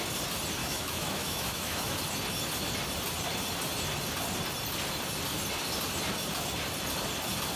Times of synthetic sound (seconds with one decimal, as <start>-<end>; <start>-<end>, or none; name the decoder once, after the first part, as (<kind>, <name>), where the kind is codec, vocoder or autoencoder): 0.6-2.0 (autoencoder, DAC-VAE)